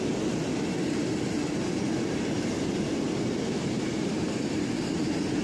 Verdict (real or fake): real